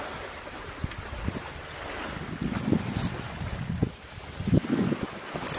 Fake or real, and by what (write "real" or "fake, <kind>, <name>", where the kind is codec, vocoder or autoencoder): real